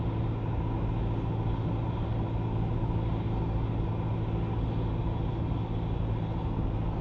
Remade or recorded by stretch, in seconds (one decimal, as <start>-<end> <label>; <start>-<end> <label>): 0.0-7.0 recorded